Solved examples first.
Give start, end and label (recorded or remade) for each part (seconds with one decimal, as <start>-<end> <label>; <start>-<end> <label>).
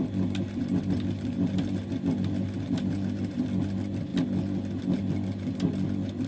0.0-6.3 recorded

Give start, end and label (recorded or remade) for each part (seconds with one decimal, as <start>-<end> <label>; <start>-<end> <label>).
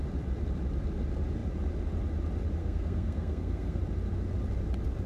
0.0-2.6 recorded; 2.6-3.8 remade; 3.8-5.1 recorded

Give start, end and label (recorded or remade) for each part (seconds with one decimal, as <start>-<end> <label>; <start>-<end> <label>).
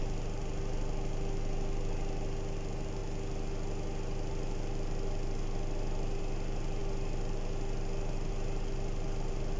0.0-9.6 recorded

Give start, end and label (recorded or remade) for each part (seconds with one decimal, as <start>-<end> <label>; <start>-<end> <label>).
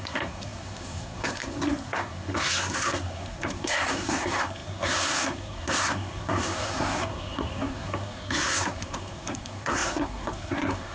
0.0-10.9 remade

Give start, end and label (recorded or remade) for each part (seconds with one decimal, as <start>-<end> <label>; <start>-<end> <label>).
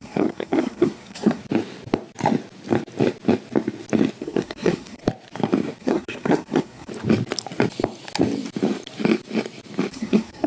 0.0-1.4 remade; 1.4-4.2 recorded; 4.2-5.0 remade; 5.0-5.8 recorded; 5.8-6.9 remade; 6.9-9.9 recorded; 9.9-10.5 remade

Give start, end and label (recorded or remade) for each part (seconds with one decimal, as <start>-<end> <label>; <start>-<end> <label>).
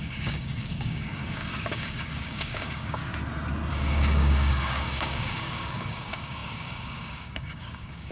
0.0-3.0 remade; 3.0-3.7 recorded; 3.7-8.1 remade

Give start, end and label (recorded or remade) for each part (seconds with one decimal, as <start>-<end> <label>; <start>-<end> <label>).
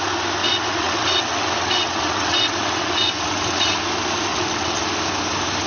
0.0-0.4 recorded; 0.4-3.8 remade; 3.8-4.3 recorded; 4.3-4.8 remade; 4.8-5.7 recorded